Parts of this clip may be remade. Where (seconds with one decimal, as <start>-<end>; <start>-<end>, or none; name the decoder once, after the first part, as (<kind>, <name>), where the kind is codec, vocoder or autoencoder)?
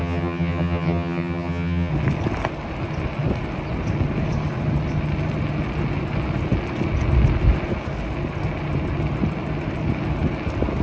0.0-1.9 (vocoder, HiFi-GAN)